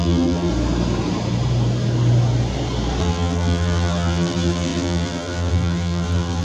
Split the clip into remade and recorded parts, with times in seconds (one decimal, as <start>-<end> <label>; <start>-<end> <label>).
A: 0.0-0.5 remade; 0.5-3.0 recorded; 3.0-6.4 remade